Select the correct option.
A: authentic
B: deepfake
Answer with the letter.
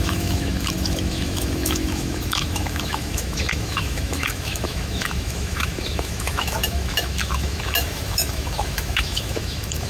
B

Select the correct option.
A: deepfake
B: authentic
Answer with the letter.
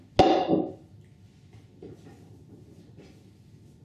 B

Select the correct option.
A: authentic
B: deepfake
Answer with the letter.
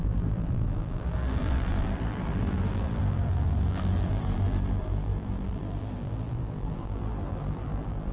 B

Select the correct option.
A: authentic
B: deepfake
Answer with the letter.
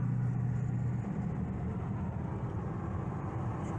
A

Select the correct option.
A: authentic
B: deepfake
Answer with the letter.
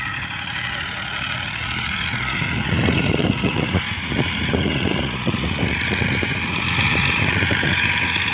B